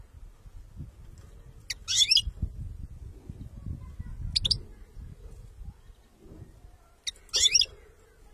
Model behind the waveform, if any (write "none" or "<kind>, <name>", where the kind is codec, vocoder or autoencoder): none